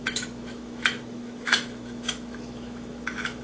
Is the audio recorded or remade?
remade